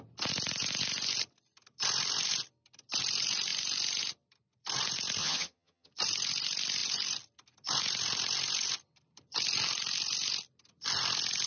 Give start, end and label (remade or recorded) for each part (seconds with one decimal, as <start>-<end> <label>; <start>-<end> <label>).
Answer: 0.0-5.2 recorded; 5.2-5.9 remade; 5.9-11.5 recorded